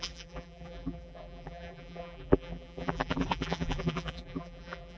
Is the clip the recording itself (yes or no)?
no